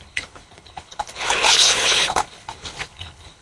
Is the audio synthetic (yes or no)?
yes